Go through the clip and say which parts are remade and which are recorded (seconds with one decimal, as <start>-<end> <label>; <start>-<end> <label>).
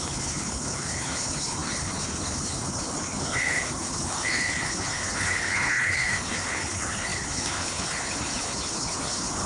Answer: 0.0-9.5 remade